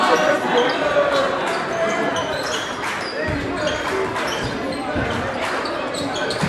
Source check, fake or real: real